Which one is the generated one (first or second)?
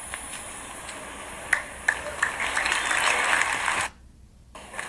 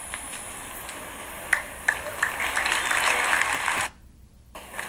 second